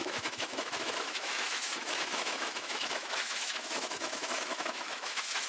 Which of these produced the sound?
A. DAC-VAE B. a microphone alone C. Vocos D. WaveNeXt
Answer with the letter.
A